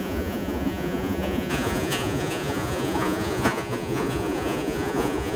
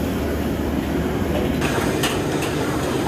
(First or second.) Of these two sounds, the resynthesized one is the first